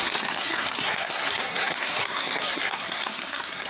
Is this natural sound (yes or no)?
no